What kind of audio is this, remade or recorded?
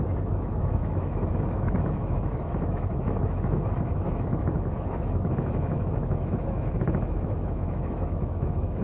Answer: remade